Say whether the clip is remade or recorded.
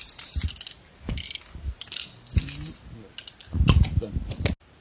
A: recorded